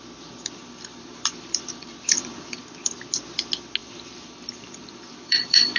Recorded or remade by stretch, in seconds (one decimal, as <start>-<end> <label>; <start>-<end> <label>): 0.0-0.6 recorded; 0.6-2.6 remade; 2.6-3.8 recorded; 3.8-5.8 remade

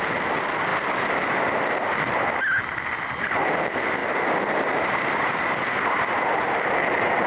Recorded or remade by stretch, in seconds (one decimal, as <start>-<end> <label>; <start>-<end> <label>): 0.0-7.3 recorded

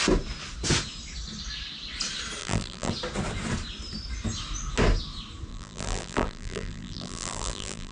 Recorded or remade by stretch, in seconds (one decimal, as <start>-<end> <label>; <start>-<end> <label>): 0.0-2.4 recorded; 2.4-2.9 remade; 2.9-5.5 recorded; 5.5-7.9 remade

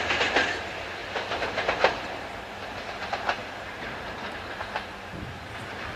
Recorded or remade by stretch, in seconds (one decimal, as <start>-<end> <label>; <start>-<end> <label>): 0.0-3.4 recorded; 3.4-4.7 remade; 4.7-6.0 recorded

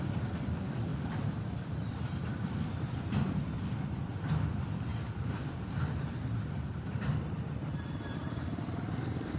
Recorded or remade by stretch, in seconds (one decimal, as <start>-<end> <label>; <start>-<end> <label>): 0.0-9.4 remade

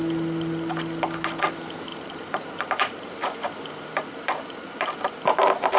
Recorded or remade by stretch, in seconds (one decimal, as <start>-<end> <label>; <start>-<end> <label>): 0.0-1.9 recorded; 1.9-5.1 remade; 5.1-5.8 recorded

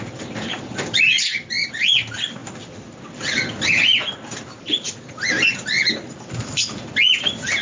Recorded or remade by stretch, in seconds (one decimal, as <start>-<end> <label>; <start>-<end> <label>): 0.0-7.6 recorded

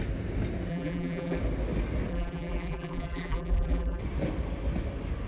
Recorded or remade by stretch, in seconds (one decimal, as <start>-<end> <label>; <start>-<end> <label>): 0.0-0.7 recorded; 0.7-1.4 remade; 1.4-2.1 recorded; 2.1-4.0 remade; 4.0-5.3 recorded